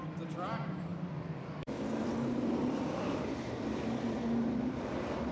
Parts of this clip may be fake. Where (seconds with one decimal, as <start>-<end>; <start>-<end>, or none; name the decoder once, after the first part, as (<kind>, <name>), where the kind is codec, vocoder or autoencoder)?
0.0-5.3 (vocoder, BigVGAN v2)